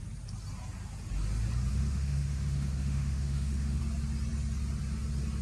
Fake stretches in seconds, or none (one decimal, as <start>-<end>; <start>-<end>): 1.7-3.8

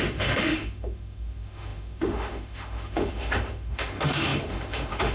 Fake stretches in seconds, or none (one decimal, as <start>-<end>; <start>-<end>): 0.0-5.1